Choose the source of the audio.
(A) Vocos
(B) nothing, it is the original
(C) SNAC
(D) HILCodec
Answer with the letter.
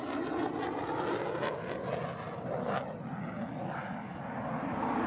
B